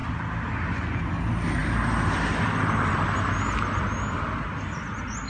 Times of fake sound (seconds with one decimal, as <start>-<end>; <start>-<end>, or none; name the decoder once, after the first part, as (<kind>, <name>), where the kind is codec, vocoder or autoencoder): none